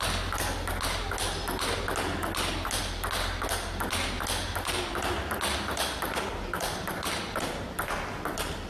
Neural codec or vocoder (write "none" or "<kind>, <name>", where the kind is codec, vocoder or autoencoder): none